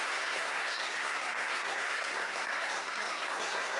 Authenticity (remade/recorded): remade